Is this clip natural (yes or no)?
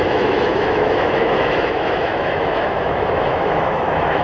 no